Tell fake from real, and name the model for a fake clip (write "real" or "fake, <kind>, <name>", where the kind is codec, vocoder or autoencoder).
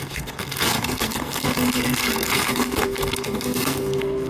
fake, codec, SNAC